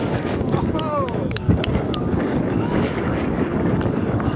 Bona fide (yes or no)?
no